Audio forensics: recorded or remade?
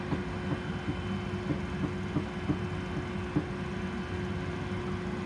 recorded